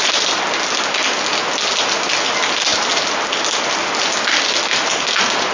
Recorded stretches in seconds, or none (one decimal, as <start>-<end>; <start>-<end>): 0.0-5.5